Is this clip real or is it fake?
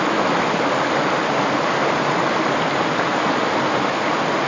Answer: real